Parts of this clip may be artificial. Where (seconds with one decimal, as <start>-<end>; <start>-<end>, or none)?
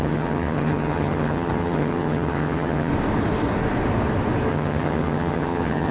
0.0-2.9; 4.5-5.9